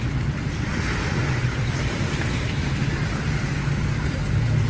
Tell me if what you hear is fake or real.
real